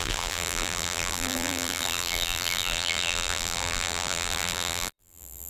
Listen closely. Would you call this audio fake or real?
fake